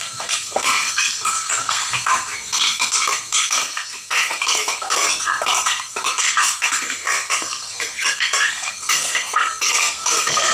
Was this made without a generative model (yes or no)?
no